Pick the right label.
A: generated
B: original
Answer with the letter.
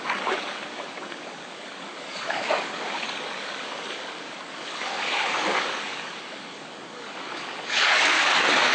A